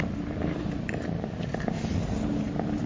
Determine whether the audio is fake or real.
real